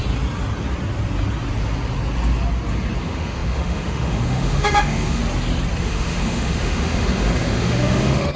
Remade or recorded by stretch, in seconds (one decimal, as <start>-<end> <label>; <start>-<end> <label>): 0.0-3.0 recorded; 3.0-5.2 remade; 5.2-5.8 recorded; 5.8-8.4 remade